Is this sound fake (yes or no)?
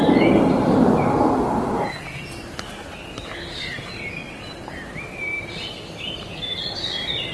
yes